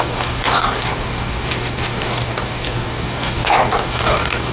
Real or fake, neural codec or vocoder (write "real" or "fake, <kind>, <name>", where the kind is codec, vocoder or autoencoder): fake, codec, DAC